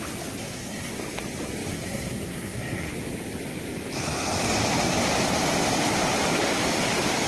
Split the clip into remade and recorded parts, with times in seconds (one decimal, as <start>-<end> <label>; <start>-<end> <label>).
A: 0.0-0.4 recorded; 0.4-0.9 remade; 0.9-1.7 recorded; 1.7-2.9 remade; 2.9-7.3 recorded